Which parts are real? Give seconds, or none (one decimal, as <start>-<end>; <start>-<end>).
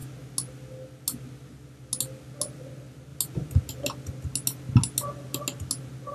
0.0-6.1